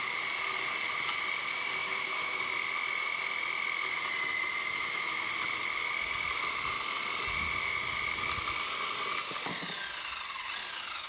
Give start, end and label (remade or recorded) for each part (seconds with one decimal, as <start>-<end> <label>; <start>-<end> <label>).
0.0-1.8 recorded; 1.8-2.4 remade; 2.4-4.7 recorded; 4.7-5.3 remade; 5.3-11.1 recorded